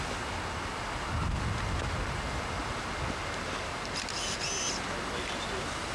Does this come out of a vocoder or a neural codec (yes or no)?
no